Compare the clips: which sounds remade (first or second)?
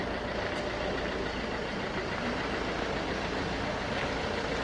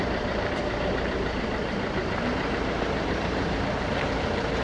second